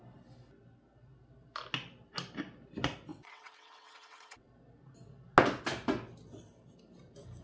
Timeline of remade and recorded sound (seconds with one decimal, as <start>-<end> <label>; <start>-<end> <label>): 0.0-3.1 recorded; 3.1-4.5 remade; 4.5-7.4 recorded

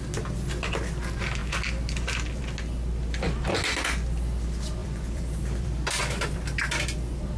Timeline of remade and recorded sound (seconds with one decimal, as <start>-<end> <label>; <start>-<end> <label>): 0.0-4.8 recorded; 4.8-6.0 remade; 6.0-7.4 recorded

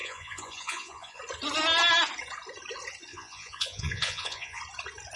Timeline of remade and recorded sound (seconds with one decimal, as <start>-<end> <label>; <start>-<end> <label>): 0.0-1.2 remade; 1.2-3.1 recorded; 3.1-4.6 remade; 4.6-5.2 recorded